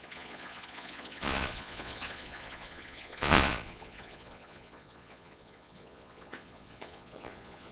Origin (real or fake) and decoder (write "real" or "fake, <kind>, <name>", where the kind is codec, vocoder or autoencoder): fake, vocoder, Vocos